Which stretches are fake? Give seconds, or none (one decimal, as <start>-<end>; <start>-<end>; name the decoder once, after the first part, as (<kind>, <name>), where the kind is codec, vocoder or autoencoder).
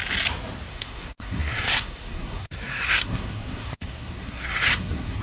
0.7-5.2 (codec, SNAC)